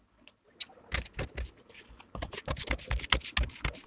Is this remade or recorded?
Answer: recorded